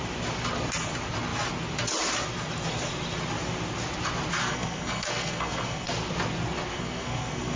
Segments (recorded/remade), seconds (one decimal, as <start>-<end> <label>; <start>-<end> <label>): 0.0-4.4 recorded; 4.4-5.9 remade; 5.9-6.7 recorded; 6.7-7.6 remade